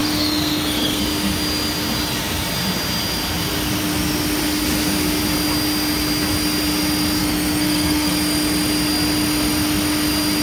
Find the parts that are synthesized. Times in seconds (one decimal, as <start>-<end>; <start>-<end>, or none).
0.0-1.0; 7.2-8.1